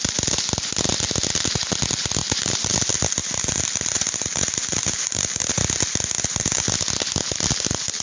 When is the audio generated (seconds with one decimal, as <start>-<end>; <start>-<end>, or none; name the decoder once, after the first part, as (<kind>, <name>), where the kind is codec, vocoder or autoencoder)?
2.2-2.8 (vocoder, BigVGAN v2); 3.2-5.6